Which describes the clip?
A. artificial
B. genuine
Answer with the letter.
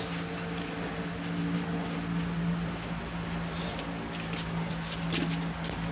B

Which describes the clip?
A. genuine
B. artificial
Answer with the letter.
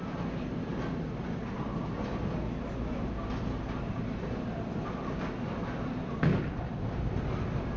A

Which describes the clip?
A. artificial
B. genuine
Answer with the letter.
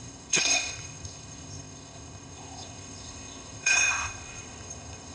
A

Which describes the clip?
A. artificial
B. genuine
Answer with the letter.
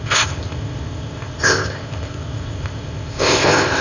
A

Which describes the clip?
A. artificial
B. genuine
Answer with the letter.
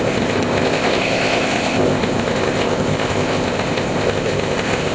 A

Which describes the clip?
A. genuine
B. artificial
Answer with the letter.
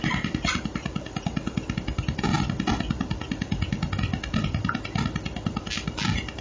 A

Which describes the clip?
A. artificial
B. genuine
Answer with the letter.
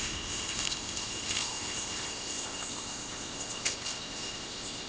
A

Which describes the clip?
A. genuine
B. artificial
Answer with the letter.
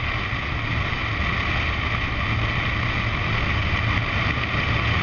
A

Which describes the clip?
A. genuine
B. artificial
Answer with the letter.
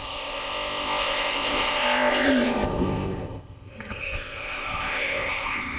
B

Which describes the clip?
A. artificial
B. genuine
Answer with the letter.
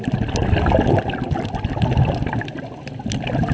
B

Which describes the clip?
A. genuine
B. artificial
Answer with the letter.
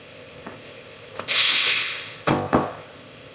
B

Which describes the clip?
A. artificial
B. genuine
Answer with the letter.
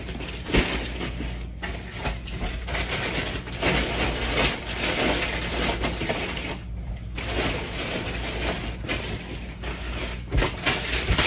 B